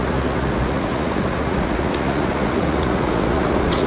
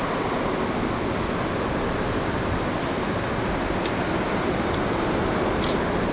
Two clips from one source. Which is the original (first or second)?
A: second